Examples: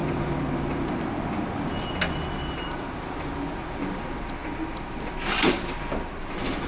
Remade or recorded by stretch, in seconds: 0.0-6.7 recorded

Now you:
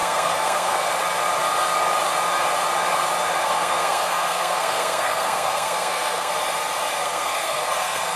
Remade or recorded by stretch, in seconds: 0.0-0.9 remade; 0.9-3.4 recorded; 3.4-6.3 remade; 6.3-7.0 recorded; 7.0-8.2 remade

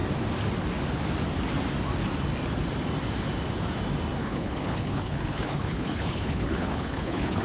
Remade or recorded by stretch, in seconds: 0.0-4.2 recorded; 4.2-7.4 remade

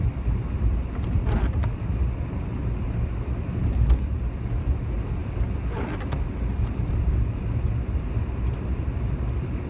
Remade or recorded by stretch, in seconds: 0.0-9.7 recorded

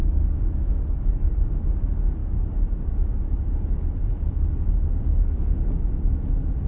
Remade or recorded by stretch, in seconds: 0.0-1.3 remade; 1.3-5.1 recorded; 5.1-5.7 remade; 5.7-6.7 recorded

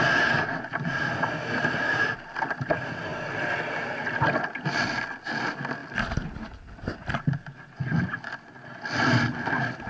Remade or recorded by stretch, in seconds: 0.0-9.9 recorded

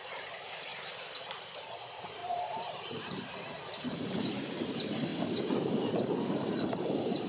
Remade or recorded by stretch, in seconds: 0.0-5.1 remade; 5.1-6.4 recorded; 6.4-7.3 remade

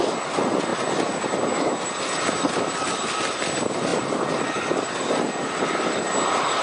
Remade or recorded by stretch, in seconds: 0.0-6.6 recorded